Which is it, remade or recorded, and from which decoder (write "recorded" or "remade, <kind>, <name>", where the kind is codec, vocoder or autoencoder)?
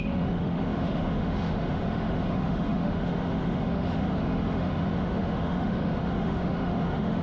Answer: remade, autoencoder, DAC-VAE